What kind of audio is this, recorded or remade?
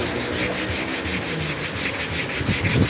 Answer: recorded